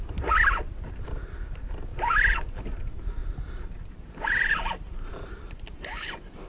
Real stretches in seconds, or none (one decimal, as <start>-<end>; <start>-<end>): 0.0-1.9; 2.8-3.2; 3.9-6.5